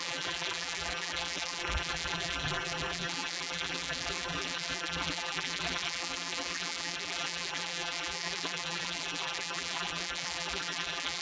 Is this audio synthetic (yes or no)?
yes